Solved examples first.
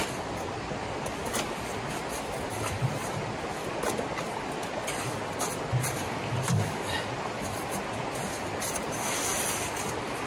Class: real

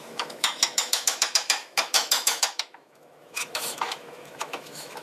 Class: fake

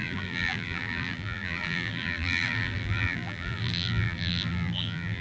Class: fake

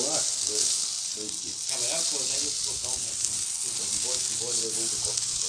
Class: real